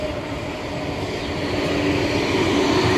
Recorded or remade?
recorded